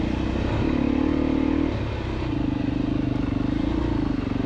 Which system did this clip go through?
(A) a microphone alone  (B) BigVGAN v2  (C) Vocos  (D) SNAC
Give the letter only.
A